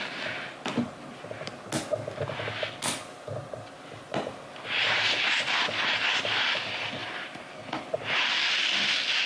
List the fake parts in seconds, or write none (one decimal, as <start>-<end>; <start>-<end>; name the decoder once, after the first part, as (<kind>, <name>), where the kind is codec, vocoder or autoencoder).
3.4-5.5 (vocoder, BigVGAN v2); 7.0-7.5